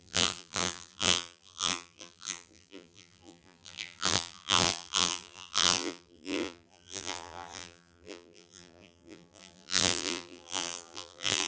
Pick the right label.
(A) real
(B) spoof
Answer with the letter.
B